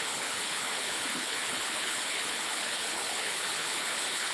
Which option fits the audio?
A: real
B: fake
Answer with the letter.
B